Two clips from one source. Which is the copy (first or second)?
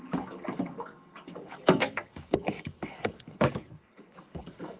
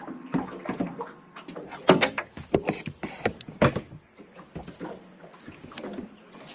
first